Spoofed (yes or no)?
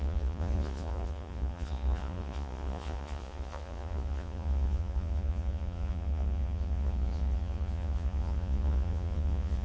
yes